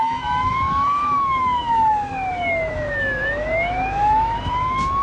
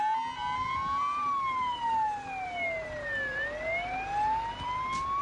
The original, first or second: second